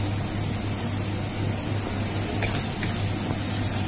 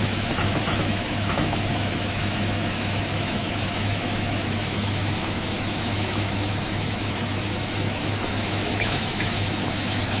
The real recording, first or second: first